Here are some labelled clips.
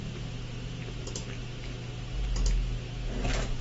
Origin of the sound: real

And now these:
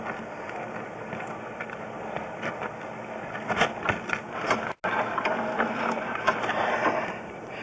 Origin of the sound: real